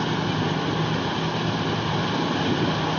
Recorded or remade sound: recorded